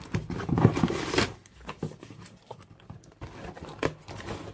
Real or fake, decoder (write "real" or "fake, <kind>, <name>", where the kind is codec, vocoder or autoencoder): fake, vocoder, BigVGAN v2